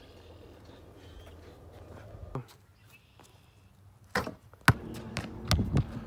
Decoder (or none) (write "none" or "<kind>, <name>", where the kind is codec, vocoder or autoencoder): none